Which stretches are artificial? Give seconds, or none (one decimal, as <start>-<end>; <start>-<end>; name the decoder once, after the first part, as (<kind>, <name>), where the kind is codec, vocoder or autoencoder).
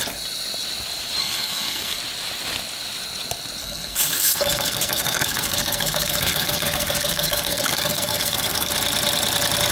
1.2-2.0 (codec, SNAC); 3.6-8.7